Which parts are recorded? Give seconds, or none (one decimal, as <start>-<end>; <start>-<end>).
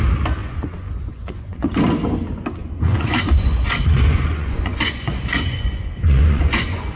0.0-0.4; 1.8-2.6